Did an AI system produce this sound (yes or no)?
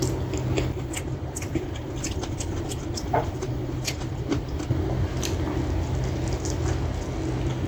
no